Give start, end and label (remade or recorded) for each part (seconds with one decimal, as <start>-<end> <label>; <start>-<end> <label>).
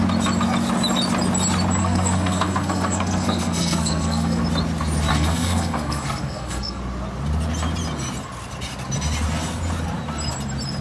0.0-1.8 recorded; 1.8-4.4 remade; 4.4-5.1 recorded; 5.1-6.8 remade; 6.8-10.8 recorded